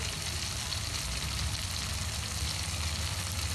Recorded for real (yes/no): yes